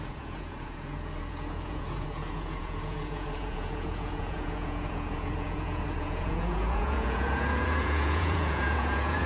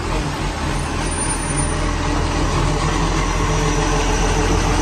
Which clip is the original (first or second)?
second